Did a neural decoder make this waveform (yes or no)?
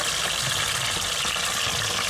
no